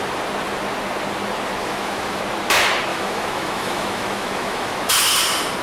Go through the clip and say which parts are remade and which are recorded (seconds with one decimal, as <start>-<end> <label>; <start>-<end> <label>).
0.0-1.6 recorded; 1.6-2.2 remade; 2.2-2.9 recorded; 2.9-4.9 remade; 4.9-5.6 recorded